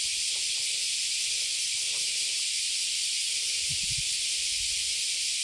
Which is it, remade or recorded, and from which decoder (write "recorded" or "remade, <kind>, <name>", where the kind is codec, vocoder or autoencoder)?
recorded